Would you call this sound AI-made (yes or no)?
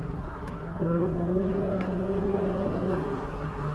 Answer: yes